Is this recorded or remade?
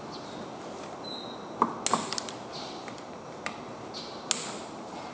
recorded